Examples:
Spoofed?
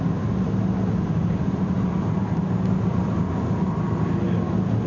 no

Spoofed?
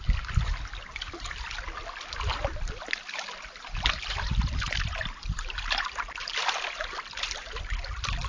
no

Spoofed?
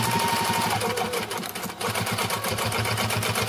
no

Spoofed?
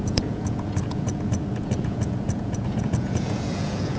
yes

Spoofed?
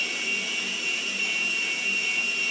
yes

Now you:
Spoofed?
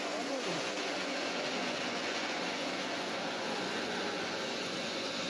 yes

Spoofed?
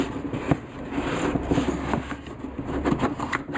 no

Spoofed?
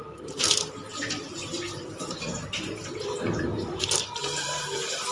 yes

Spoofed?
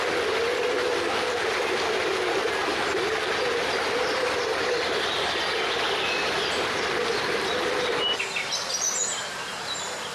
no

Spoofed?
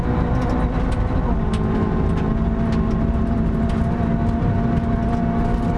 no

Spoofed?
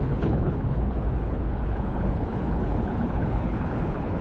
yes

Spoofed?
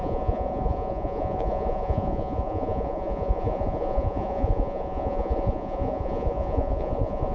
yes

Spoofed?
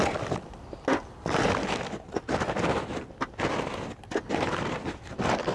no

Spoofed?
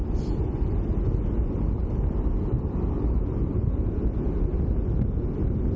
no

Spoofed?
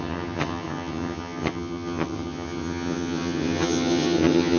yes